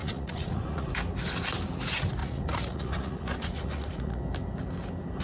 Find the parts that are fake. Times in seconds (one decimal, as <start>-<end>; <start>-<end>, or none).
0.0-0.9; 2.2-4.2